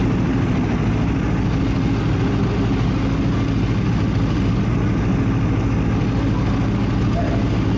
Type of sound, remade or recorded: recorded